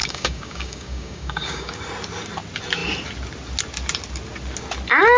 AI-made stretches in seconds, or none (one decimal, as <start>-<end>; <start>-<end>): 0.0-1.8

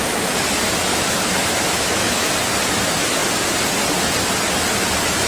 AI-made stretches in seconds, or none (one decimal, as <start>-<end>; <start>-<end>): 0.9-2.3

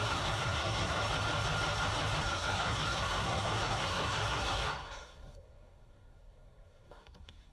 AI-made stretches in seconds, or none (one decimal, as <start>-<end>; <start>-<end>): 0.0-1.0; 2.2-7.5

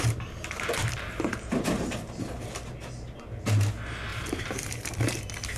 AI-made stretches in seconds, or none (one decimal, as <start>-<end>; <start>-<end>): 0.8-1.9; 4.1-4.9

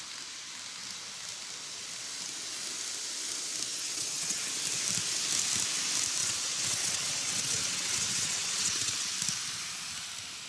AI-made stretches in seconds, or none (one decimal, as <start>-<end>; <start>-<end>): 3.7-4.4; 6.2-9.1

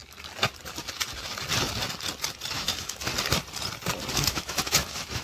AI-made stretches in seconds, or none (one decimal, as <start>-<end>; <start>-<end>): 2.5-3.1; 4.1-5.2